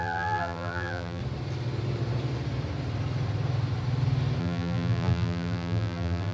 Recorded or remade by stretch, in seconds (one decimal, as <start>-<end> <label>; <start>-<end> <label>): 0.0-1.2 remade; 1.2-4.4 recorded; 4.4-6.3 remade